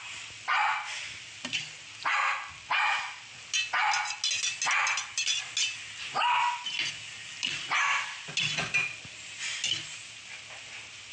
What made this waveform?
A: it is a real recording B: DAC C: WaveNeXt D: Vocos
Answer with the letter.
A